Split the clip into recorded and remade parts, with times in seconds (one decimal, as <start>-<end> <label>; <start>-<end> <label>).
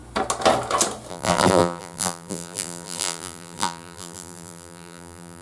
0.0-1.1 recorded; 1.1-5.4 remade